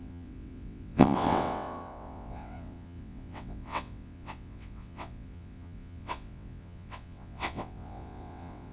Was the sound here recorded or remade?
remade